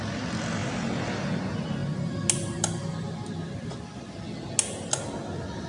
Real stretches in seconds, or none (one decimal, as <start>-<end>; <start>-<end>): 0.0-5.7